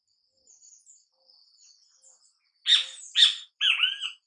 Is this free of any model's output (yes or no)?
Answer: yes